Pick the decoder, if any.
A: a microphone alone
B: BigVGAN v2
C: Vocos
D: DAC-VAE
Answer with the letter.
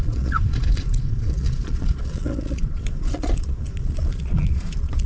C